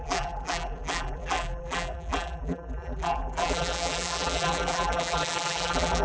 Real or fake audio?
fake